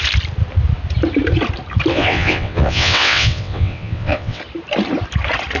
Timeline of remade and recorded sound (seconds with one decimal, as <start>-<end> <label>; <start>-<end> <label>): 0.0-1.9 recorded; 1.9-4.4 remade; 4.4-5.6 recorded